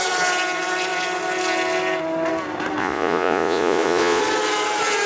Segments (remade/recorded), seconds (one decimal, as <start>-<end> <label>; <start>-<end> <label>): 0.0-2.8 recorded; 2.8-4.2 remade; 4.2-5.1 recorded

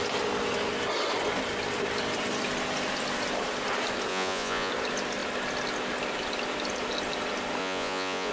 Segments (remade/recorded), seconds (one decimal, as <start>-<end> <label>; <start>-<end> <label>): 0.0-4.1 recorded; 4.1-4.7 remade; 4.7-7.6 recorded; 7.6-8.3 remade

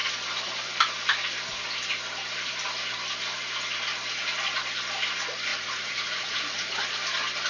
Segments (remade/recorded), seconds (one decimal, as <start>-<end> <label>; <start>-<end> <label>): 0.0-5.5 recorded; 5.5-6.4 remade; 6.4-7.5 recorded

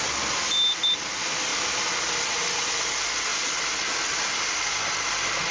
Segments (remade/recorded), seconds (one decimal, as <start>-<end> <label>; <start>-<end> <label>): 0.0-5.5 recorded

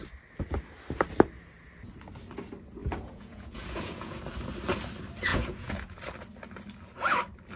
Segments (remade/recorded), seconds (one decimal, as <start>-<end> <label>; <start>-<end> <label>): 0.0-2.8 recorded; 2.8-4.2 remade; 4.2-5.3 recorded; 5.3-6.0 remade; 6.0-7.6 recorded

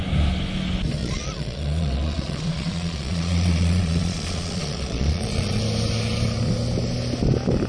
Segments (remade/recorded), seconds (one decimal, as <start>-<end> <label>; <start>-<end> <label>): 0.0-1.0 recorded; 1.0-5.6 remade; 5.6-7.7 recorded

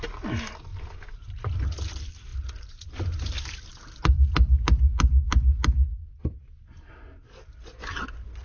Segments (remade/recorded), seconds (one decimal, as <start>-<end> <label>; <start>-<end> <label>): 0.0-8.4 recorded

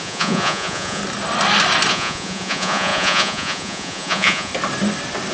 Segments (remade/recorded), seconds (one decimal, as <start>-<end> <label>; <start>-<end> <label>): 0.0-1.0 remade; 1.0-1.9 recorded; 1.9-4.5 remade; 4.5-5.3 recorded